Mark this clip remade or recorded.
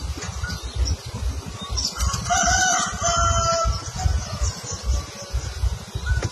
recorded